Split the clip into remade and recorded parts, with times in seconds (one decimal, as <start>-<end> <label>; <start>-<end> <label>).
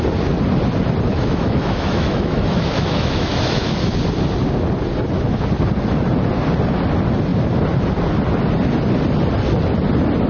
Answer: 0.0-1.1 recorded; 1.1-3.8 remade; 3.8-10.3 recorded